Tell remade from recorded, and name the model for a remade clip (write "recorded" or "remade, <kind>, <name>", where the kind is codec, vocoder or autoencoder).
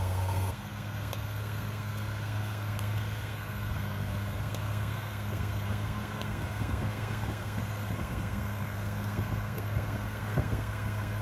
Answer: remade, codec, SNAC